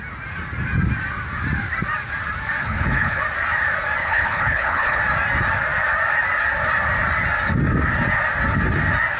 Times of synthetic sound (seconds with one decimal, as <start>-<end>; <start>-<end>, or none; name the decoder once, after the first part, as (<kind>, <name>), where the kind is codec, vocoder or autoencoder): 2.6-3.2 (codec, HILCodec); 4.0-5.0